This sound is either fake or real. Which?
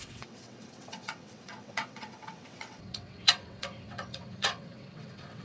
fake